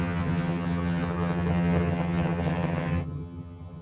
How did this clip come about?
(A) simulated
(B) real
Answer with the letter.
A